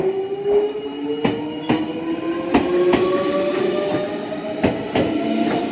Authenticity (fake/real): real